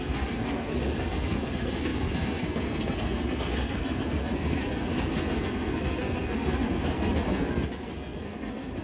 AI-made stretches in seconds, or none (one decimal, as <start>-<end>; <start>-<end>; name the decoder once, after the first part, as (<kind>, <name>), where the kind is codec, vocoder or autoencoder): 0.0-8.8 (codec, SNAC)